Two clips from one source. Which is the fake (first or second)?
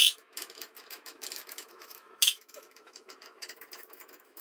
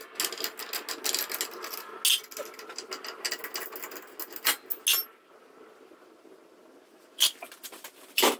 first